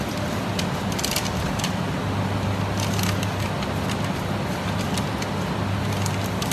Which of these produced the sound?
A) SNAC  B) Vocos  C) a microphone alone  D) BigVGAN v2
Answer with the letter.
C